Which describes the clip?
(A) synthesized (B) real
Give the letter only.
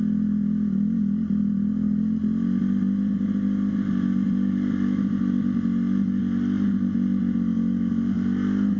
B